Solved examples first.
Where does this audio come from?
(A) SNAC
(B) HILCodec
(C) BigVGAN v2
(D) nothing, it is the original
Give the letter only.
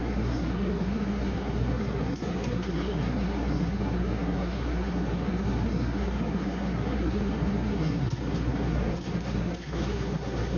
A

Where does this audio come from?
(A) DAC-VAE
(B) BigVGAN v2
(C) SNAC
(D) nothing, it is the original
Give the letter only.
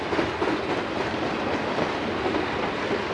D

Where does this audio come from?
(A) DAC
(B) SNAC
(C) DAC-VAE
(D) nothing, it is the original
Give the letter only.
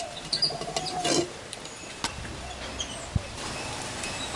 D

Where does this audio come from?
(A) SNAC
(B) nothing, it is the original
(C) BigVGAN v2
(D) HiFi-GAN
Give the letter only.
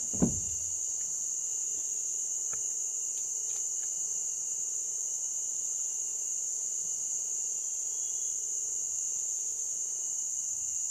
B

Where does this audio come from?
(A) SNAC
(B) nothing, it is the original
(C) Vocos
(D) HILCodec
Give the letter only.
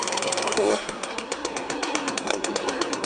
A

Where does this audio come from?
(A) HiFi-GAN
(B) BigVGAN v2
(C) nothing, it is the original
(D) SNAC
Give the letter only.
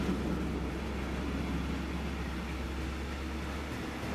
C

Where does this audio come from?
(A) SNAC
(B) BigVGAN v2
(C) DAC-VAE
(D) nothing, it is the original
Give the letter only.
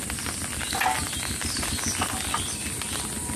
D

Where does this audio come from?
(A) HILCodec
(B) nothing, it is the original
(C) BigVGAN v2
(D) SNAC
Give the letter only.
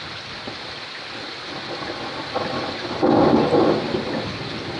B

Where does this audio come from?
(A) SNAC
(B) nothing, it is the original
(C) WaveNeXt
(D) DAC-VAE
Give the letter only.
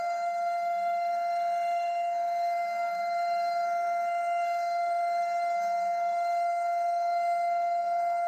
A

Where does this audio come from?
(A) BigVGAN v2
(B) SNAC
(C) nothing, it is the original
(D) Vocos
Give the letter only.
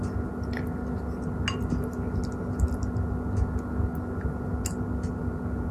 C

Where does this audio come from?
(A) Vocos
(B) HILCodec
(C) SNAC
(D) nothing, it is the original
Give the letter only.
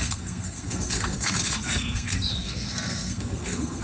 C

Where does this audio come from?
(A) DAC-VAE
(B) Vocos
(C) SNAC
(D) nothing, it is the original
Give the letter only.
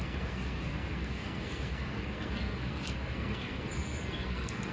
C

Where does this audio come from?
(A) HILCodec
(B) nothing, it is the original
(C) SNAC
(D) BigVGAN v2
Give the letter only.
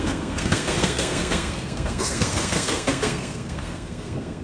C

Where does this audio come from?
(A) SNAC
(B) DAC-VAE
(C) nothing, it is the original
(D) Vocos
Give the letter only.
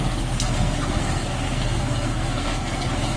A